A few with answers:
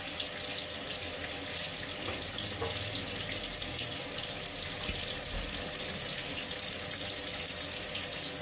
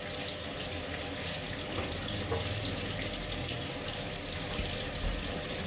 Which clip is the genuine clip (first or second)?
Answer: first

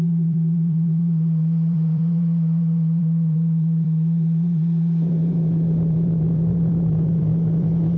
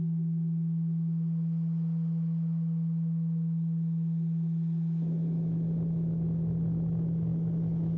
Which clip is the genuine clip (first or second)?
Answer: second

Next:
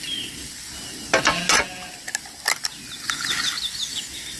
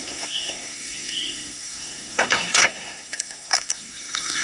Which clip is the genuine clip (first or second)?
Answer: first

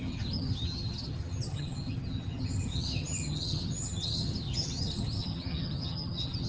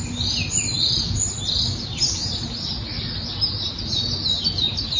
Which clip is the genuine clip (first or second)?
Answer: second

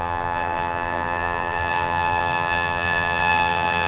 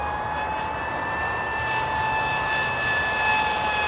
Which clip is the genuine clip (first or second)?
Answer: second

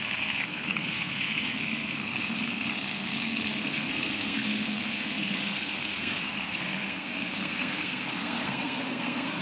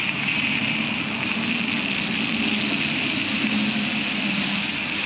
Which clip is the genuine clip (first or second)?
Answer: second